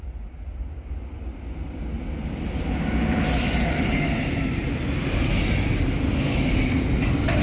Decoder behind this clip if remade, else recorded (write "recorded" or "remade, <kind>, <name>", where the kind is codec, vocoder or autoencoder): recorded